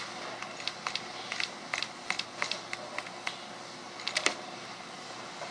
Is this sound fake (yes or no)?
no